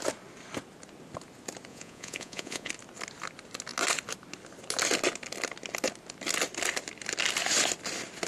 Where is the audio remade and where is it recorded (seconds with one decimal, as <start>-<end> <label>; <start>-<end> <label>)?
0.0-1.7 recorded; 1.7-2.7 remade; 2.7-8.3 recorded